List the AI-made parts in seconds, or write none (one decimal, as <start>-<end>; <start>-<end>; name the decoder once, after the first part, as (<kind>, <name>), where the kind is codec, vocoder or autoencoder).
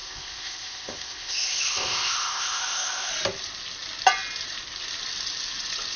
0.0-3.1 (codec, ZipCodec)